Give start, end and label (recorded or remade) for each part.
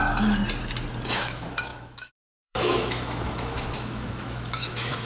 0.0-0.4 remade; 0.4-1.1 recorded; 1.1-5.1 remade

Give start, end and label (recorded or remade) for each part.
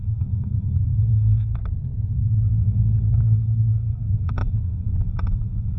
0.0-1.6 remade; 1.6-2.1 recorded; 2.1-5.8 remade